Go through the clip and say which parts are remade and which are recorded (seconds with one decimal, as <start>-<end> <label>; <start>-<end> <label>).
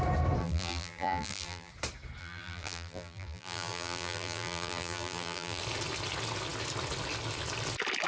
0.0-0.4 recorded; 0.4-1.7 remade; 1.7-2.2 recorded; 2.2-5.6 remade; 5.6-8.1 recorded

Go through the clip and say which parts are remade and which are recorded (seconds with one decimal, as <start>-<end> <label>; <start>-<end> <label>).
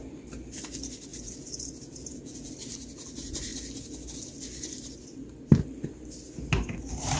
0.0-1.1 recorded; 1.1-2.5 remade; 2.5-7.2 recorded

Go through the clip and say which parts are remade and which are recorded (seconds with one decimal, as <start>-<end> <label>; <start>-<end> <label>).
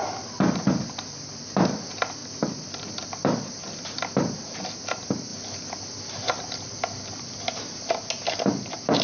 0.0-0.6 remade; 0.6-2.2 recorded; 2.2-3.7 remade; 3.7-9.0 recorded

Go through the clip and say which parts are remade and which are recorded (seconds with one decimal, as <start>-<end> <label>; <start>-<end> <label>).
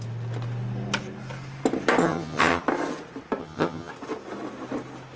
0.0-2.0 recorded; 2.0-2.6 remade; 2.6-3.4 recorded; 3.4-3.9 remade; 3.9-5.2 recorded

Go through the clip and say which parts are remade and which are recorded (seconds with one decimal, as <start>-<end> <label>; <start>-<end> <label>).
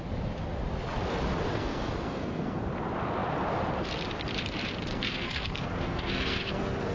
0.0-1.5 recorded; 1.5-2.6 remade; 2.6-4.9 recorded; 4.9-6.9 remade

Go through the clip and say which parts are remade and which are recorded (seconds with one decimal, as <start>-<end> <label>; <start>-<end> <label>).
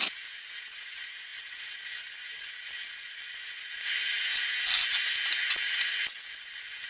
0.0-6.9 recorded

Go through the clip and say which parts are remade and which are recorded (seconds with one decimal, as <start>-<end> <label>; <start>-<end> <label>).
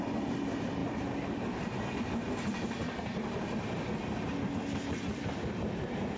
0.0-6.2 recorded